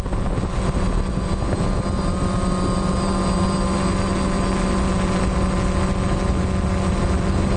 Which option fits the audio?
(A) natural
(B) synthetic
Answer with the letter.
A